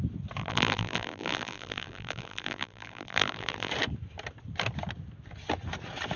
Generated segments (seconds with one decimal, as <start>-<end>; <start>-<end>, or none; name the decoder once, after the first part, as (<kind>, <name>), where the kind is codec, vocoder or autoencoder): 0.4-3.7 (vocoder, BigVGAN v2)